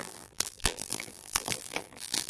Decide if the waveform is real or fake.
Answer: fake